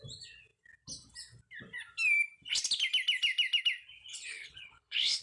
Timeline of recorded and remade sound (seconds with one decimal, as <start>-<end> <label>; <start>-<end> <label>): 0.0-4.1 recorded; 4.1-5.2 remade